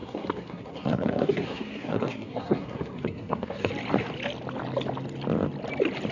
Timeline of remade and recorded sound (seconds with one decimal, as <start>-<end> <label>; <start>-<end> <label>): 0.0-3.7 remade; 3.7-6.1 recorded